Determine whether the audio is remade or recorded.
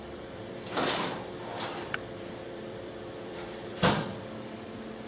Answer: remade